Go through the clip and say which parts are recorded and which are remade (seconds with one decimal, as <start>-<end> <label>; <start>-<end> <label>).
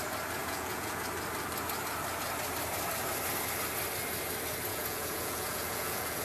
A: 0.0-0.4 recorded; 0.4-1.0 remade; 1.0-4.7 recorded; 4.7-6.2 remade